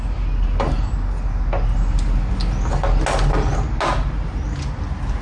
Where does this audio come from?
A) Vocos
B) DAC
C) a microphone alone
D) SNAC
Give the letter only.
C